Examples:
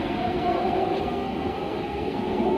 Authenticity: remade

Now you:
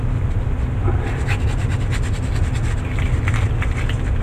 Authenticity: recorded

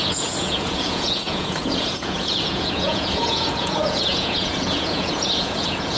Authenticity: remade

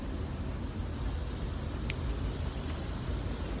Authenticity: recorded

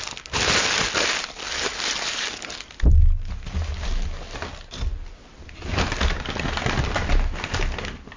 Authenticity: recorded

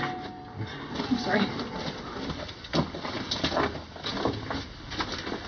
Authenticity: recorded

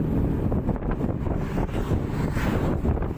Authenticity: recorded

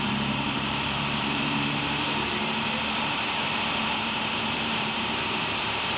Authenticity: remade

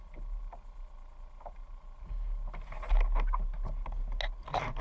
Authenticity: recorded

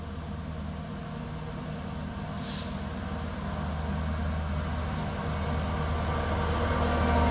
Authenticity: recorded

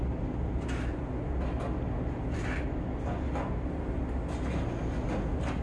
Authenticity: recorded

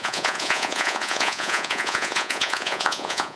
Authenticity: remade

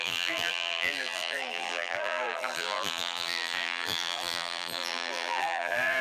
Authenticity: remade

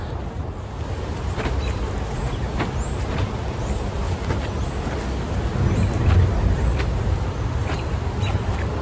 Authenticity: recorded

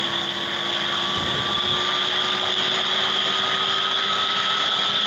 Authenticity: recorded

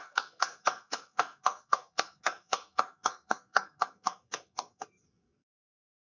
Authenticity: remade